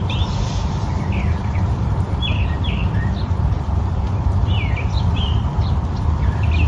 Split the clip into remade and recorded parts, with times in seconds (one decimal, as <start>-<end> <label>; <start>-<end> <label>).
0.0-6.7 remade